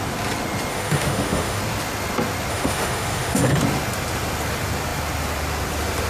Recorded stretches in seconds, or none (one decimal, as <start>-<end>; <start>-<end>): 0.0-0.7; 1.6-2.5; 3.5-6.1